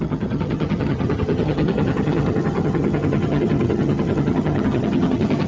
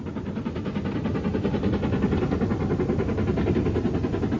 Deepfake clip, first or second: first